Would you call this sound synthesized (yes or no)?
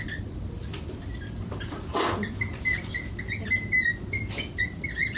yes